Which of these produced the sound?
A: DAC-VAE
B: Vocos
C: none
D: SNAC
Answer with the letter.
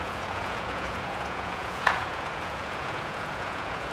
B